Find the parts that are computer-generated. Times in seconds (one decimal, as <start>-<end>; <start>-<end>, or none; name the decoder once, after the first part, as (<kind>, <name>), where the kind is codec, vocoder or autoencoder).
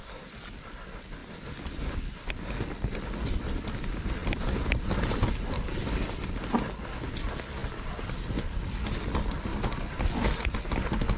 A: 4.2-5.3 (vocoder, BigVGAN v2); 9.5-10.0